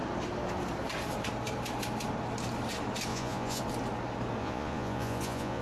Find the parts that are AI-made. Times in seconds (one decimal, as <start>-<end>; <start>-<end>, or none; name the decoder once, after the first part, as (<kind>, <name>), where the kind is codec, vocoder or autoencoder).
3.1-3.6 (vocoder, Vocos); 4.4-5.6